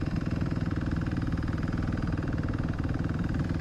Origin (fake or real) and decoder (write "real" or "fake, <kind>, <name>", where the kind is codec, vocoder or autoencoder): fake, vocoder, BigVGAN v2